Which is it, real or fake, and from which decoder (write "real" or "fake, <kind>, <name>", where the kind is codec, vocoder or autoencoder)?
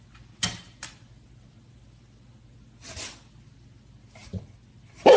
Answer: real